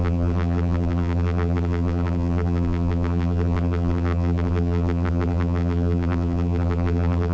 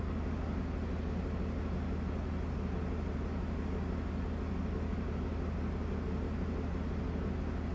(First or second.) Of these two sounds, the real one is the second